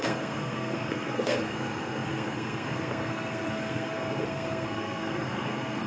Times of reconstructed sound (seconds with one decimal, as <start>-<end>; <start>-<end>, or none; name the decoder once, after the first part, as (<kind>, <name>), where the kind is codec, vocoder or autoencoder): 0.0-5.9 (codec, SNAC)